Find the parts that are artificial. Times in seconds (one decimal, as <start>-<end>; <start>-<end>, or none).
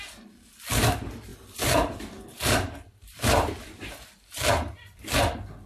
1.3-4.7